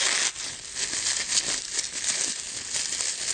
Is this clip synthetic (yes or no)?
no